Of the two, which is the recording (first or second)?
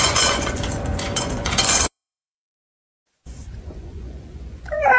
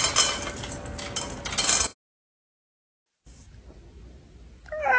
second